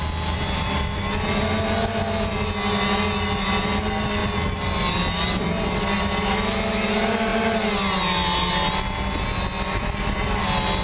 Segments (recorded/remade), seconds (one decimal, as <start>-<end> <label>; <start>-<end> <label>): 0.0-10.8 recorded